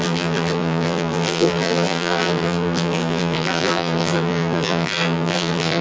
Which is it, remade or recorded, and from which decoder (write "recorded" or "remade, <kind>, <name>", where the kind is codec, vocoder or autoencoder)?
remade, vocoder, BigVGAN v2